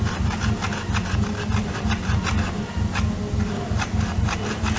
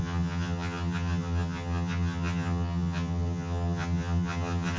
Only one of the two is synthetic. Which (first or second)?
second